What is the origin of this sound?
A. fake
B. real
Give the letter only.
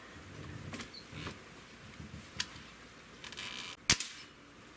B